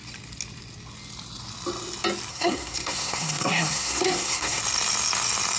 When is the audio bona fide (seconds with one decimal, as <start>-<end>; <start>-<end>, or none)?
0.0-2.3; 4.6-5.6